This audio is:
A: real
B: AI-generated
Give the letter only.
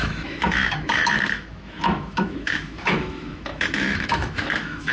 B